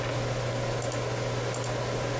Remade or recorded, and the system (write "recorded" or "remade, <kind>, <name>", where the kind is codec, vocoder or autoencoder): recorded